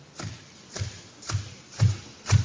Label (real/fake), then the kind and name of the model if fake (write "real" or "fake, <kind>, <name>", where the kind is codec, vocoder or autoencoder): real